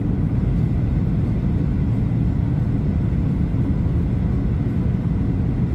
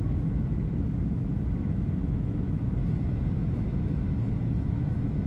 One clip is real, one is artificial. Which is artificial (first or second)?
second